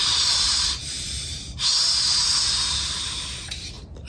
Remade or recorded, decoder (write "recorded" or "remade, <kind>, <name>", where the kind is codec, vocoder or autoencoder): remade, vocoder, BigVGAN v2